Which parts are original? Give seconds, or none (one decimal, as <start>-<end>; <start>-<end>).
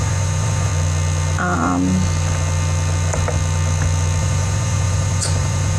0.7-4.2